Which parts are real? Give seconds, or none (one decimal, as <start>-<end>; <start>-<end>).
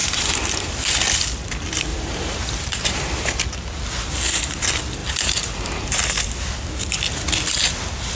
0.7-1.9; 3.4-5.0; 6.4-8.1